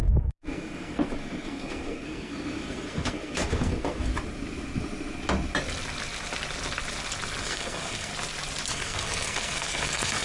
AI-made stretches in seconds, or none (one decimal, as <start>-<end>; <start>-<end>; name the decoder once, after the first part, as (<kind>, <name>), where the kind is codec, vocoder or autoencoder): 0.0-4.1 (codec, SNAC); 7.4-8.1; 8.7-10.2